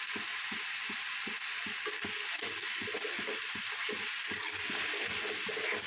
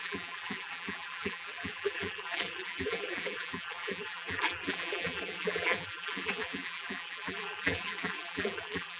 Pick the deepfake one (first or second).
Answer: second